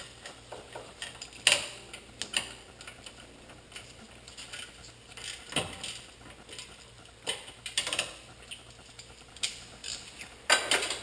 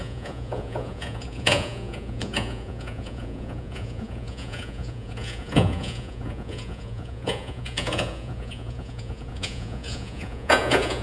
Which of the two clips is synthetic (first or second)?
second